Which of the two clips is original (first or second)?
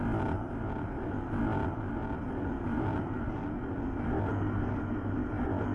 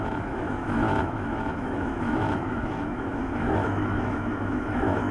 first